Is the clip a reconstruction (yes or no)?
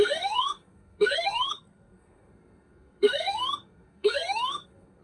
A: yes